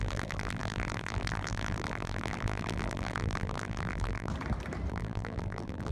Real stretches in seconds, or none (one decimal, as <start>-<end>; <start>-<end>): 4.3-4.9